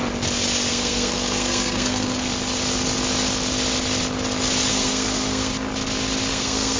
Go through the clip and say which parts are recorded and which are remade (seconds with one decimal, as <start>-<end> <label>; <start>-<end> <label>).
0.0-0.7 recorded; 0.7-2.3 remade; 2.3-4.7 recorded; 4.7-5.5 remade; 5.5-6.3 recorded; 6.3-6.8 remade